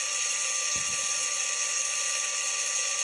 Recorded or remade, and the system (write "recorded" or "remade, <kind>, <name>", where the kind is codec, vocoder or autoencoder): recorded